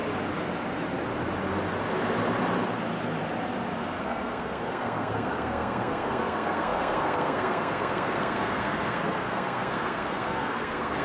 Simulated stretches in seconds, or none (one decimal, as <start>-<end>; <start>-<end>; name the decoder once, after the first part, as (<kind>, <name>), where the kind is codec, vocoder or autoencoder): 4.0-11.0 (codec, SNAC)